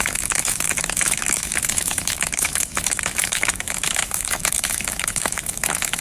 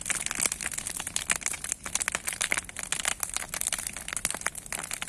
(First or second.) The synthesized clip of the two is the first